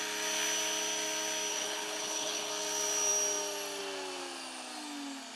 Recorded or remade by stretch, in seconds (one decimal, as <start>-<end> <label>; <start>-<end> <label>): 0.0-1.5 recorded; 1.5-2.5 remade; 2.5-5.4 recorded